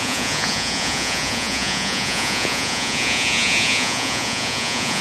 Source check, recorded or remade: remade